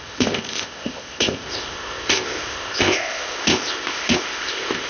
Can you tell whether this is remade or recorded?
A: remade